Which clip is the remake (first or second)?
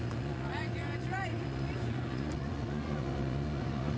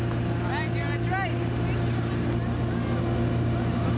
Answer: first